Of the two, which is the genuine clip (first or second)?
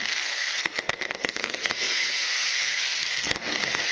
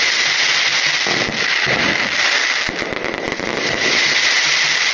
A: second